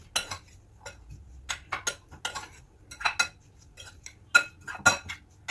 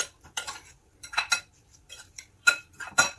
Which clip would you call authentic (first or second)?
first